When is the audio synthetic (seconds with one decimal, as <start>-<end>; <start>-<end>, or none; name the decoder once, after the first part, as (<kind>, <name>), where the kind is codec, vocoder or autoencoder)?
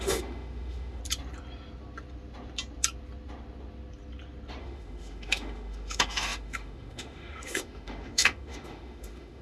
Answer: 0.0-1.0 (autoencoder, DAC-VAE); 4.6-9.4